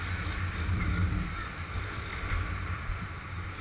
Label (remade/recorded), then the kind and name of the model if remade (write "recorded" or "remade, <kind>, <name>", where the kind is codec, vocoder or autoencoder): remade, vocoder, BigVGAN v2